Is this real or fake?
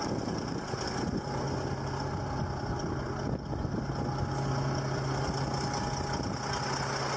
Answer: real